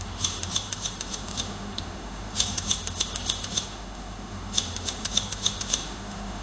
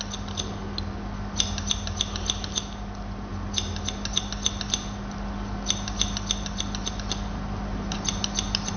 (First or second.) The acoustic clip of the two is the second